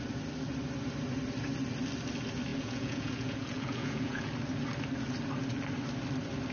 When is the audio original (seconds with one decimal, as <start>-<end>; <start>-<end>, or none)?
0.0-2.5; 4.3-6.5